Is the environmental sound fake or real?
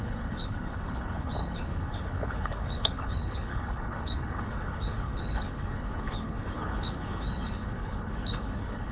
fake